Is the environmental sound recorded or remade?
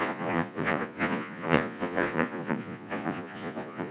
remade